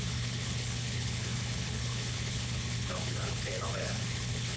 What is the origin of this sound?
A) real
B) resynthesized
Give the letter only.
B